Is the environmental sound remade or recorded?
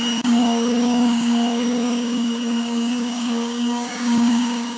remade